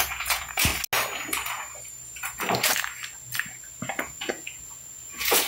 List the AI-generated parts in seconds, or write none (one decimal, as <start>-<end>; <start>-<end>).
0.0-0.7; 4.0-5.5